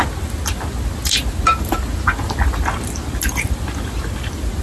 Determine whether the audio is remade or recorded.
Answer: recorded